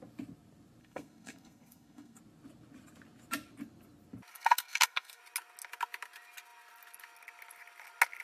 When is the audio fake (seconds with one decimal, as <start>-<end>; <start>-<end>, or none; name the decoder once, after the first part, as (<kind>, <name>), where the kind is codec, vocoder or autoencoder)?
0.8-2.2 (codec, SNAC); 4.3-5.2